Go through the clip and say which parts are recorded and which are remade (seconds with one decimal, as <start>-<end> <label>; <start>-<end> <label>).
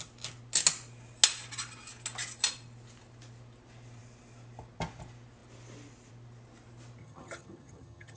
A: 0.0-7.0 recorded; 7.0-8.2 remade